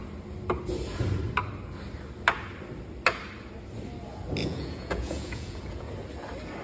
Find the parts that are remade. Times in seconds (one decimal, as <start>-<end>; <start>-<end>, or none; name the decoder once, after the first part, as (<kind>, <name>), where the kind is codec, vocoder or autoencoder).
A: 4.4-5.9 (vocoder, Vocos)